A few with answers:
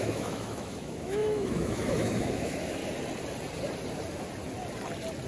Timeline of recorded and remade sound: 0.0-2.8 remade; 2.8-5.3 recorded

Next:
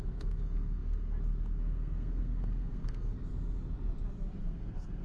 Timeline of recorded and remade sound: 0.0-3.1 remade; 3.1-4.4 recorded; 4.4-5.0 remade

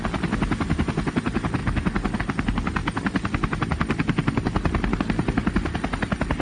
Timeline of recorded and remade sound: 0.0-6.4 recorded

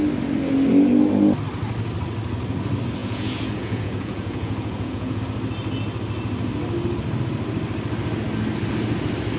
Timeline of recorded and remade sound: 0.0-3.0 recorded; 3.0-5.2 remade; 5.2-9.4 recorded

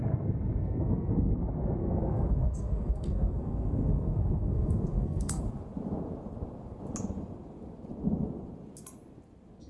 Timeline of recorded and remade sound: 0.0-0.6 recorded; 0.6-1.3 remade; 1.3-1.8 recorded; 1.8-5.4 remade; 5.4-9.7 recorded

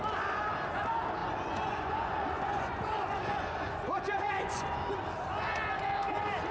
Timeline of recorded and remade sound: 0.0-1.2 recorded; 1.2-4.9 remade; 4.9-6.5 recorded